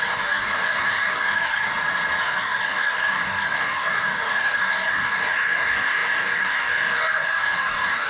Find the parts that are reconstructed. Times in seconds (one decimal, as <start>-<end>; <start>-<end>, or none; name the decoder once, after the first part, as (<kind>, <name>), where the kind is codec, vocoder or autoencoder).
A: 0.0-1.7 (codec, DAC); 2.2-8.1